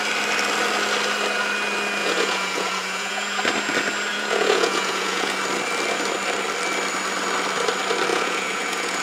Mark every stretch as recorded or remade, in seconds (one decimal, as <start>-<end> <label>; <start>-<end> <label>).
0.0-2.0 recorded; 2.0-3.4 remade; 3.4-4.1 recorded; 4.1-5.3 remade; 5.3-8.1 recorded; 8.1-9.0 remade